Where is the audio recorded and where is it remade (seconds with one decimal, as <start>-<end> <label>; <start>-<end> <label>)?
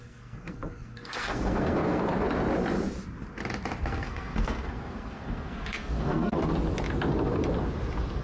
0.0-2.1 remade; 2.1-3.8 recorded; 3.8-6.4 remade; 6.4-8.2 recorded